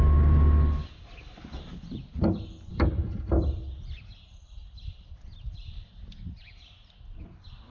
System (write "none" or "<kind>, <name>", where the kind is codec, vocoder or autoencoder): none